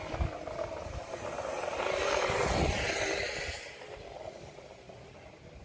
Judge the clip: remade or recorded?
recorded